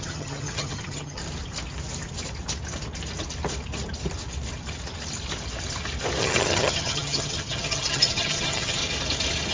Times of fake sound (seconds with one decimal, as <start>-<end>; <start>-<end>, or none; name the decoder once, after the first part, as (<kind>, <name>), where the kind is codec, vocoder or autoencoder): 0.0-1.2 (vocoder, HiFi-GAN); 6.2-8.8